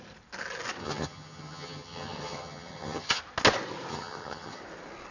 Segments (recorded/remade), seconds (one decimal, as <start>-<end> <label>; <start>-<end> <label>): 0.0-0.8 recorded; 0.8-3.2 remade; 3.2-3.9 recorded; 3.9-4.6 remade; 4.6-5.1 recorded